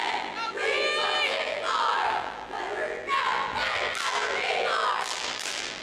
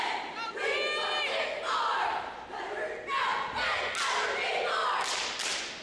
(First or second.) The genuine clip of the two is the second